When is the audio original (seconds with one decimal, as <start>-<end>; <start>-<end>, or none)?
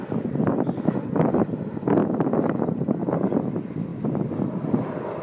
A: 0.0-5.2